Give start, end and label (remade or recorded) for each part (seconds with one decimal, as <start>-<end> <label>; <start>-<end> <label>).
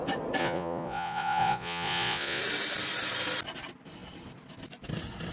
0.0-0.4 recorded; 0.4-2.4 remade; 2.4-5.3 recorded